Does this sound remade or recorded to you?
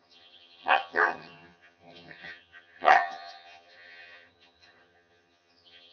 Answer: remade